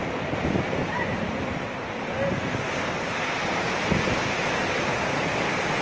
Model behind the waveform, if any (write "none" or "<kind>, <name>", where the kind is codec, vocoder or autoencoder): none